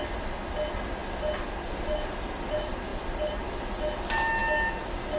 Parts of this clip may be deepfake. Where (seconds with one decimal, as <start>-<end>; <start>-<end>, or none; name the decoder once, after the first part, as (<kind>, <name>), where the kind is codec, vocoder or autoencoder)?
none

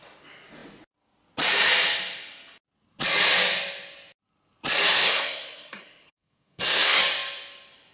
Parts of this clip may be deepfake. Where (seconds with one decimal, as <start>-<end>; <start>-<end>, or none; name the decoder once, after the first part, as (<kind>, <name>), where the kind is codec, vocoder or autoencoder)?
4.9-7.0 (codec, SNAC)

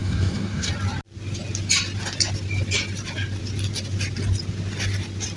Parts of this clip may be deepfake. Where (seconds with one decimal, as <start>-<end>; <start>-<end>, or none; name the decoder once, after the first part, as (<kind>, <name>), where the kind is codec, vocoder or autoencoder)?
0.0-0.7 (codec, SNAC)

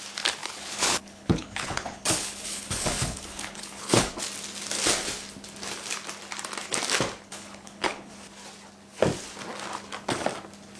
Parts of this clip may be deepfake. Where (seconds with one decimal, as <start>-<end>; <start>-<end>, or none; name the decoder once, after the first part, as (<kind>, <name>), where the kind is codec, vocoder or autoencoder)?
0.4-4.2 (codec, HILCodec); 7.3-8.1

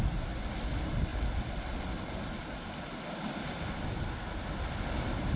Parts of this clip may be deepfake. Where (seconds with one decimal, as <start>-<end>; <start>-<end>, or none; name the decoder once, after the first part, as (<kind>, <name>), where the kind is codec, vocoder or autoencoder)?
none

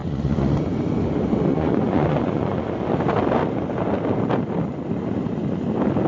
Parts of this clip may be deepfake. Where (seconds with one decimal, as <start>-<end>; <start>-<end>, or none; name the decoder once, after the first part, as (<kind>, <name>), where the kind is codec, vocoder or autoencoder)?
0.0-0.6 (vocoder, Vocos); 1.5-2.7

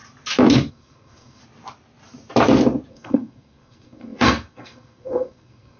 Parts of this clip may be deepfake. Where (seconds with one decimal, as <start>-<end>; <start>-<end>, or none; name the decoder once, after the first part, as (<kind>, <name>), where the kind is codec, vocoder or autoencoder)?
0.7-1.4 (codec, SNAC); 2.9-5.8

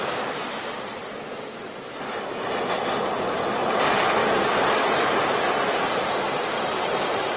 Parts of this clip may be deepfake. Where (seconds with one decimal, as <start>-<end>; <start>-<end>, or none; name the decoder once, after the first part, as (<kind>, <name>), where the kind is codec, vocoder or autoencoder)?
0.0-1.0 (vocoder, BigVGAN v2); 2.3-4.2; 4.8-7.4